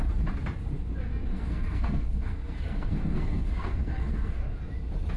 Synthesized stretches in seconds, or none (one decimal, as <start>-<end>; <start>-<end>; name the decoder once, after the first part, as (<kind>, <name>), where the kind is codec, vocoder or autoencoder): 1.3-4.4 (codec, SNAC)

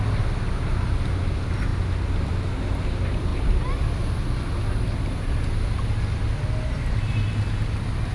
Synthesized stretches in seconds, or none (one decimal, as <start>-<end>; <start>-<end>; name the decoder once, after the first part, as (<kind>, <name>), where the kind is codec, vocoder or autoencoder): none

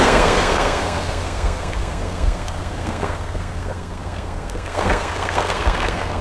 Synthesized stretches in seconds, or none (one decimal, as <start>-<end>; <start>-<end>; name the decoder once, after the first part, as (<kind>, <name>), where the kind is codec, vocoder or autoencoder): 0.0-6.2 (codec, SNAC)

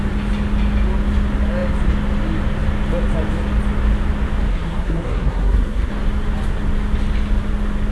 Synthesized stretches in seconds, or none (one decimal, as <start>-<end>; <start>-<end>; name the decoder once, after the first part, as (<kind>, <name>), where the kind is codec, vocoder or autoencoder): 4.5-5.9 (codec, SNAC)

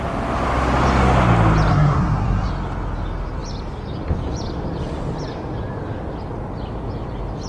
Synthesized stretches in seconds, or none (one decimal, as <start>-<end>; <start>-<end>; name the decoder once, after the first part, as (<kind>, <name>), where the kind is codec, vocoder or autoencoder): 1.7-2.5 (codec, SNAC)